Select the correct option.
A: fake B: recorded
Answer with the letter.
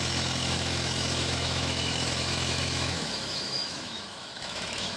A